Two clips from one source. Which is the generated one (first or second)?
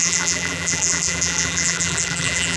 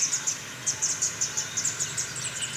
first